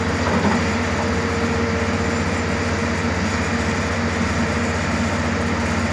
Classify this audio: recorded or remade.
recorded